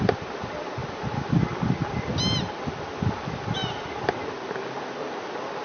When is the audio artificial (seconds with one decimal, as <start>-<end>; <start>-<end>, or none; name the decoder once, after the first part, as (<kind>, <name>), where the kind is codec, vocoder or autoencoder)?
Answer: none